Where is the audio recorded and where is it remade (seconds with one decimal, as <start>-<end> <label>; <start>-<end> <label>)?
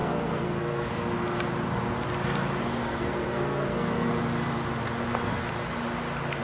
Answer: 0.0-0.9 remade; 0.9-2.8 recorded; 2.8-4.1 remade; 4.1-6.4 recorded